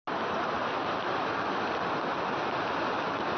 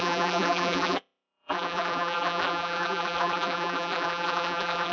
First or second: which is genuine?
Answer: first